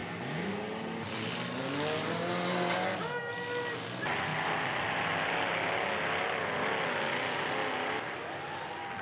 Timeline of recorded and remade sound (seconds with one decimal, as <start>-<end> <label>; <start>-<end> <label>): 0.0-9.0 recorded